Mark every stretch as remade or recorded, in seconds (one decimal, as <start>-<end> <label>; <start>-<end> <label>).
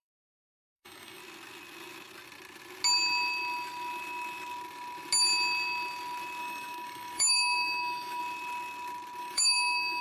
0.0-1.2 remade; 1.2-6.4 recorded; 6.4-8.2 remade; 8.2-9.2 recorded; 9.2-10.0 remade